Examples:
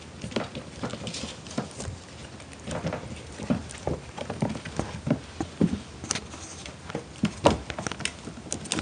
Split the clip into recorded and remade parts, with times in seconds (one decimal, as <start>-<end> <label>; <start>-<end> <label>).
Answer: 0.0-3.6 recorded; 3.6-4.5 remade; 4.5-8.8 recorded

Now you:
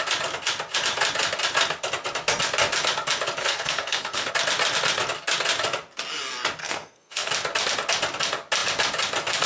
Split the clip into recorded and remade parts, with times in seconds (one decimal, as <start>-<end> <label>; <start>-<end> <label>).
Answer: 0.0-3.4 recorded; 3.4-4.3 remade; 4.3-6.6 recorded; 6.6-7.3 remade; 7.3-9.5 recorded

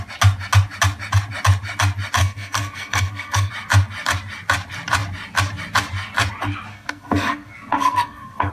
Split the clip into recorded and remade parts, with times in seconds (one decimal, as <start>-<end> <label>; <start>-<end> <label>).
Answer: 0.0-2.2 recorded; 2.2-3.5 remade; 3.5-6.7 recorded; 6.7-8.5 remade

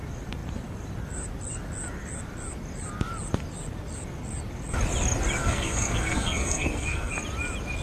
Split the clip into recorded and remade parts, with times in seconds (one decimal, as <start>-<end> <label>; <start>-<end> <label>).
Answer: 0.0-5.4 recorded; 5.4-7.1 remade; 7.1-7.8 recorded

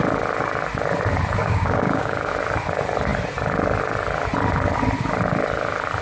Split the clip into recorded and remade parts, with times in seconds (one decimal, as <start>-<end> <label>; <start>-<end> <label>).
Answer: 0.0-1.4 recorded; 1.4-2.3 remade; 2.3-6.0 recorded

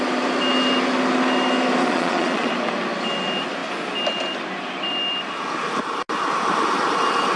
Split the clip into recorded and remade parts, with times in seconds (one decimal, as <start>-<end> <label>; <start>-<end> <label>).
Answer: 0.0-1.8 recorded; 1.8-2.5 remade; 2.5-7.4 recorded